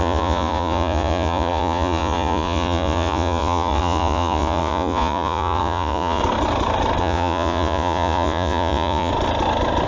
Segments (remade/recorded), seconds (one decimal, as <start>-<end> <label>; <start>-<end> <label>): 0.0-6.2 remade; 6.2-7.0 recorded; 7.0-9.1 remade; 9.1-9.9 recorded